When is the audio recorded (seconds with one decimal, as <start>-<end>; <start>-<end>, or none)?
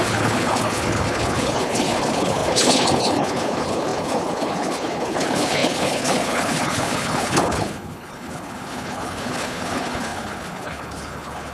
none